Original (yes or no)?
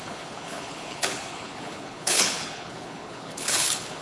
no